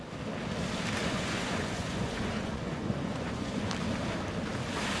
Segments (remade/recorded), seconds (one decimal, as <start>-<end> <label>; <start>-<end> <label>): 0.0-1.0 recorded; 1.0-3.7 remade; 3.7-5.0 recorded